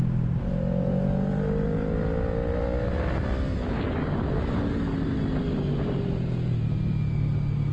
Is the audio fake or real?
real